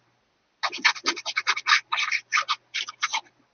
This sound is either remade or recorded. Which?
remade